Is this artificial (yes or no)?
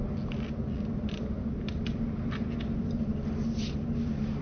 no